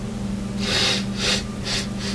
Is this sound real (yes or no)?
yes